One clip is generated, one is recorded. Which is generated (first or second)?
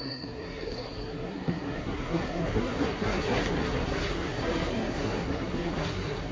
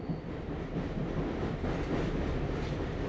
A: first